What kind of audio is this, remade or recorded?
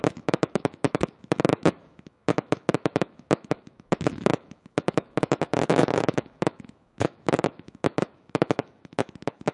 remade